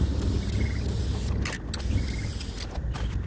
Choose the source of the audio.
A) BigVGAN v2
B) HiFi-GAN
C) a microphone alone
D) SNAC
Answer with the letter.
C